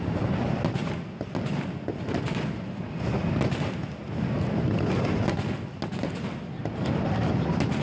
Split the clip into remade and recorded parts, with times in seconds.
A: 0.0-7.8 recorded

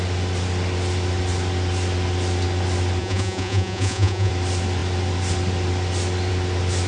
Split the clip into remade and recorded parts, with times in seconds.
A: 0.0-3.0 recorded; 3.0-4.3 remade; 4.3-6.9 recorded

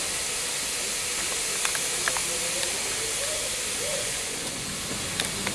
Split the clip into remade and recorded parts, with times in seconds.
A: 0.0-3.9 recorded; 3.9-4.7 remade; 4.7-5.5 recorded

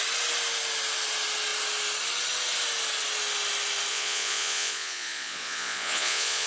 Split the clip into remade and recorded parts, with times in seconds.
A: 0.0-3.9 recorded; 3.9-6.5 remade

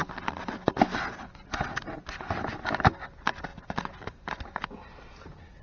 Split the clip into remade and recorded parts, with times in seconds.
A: 0.0-5.6 recorded

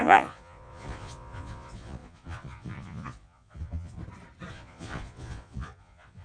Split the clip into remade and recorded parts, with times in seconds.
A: 0.0-4.0 remade; 4.0-4.5 recorded; 4.5-6.2 remade

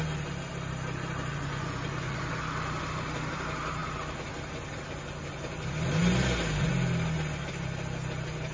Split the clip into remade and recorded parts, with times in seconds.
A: 0.0-1.3 recorded; 1.3-2.3 remade; 2.3-8.5 recorded